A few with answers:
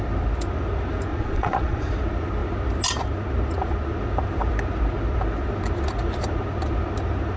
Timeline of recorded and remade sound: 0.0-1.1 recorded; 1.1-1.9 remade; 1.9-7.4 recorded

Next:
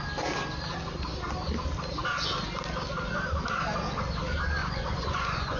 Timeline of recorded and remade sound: 0.0-4.6 recorded; 4.6-5.6 remade

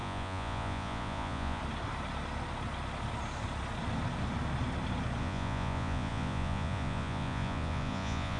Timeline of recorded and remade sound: 0.0-1.6 remade; 1.6-5.2 recorded; 5.2-8.4 remade

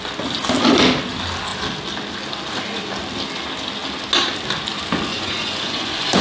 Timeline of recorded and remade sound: 0.0-5.1 recorded; 5.1-6.2 remade

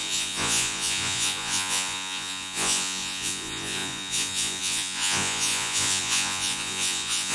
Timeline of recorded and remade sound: 0.0-7.3 remade

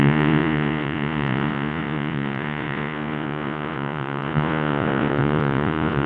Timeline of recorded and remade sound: 0.0-6.1 remade

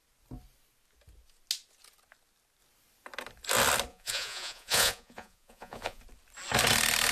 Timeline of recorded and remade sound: 0.0-3.9 recorded; 3.9-6.0 remade; 6.0-7.1 recorded

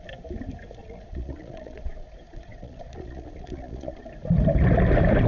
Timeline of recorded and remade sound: 0.0-0.8 recorded; 0.8-4.0 remade; 4.0-5.3 recorded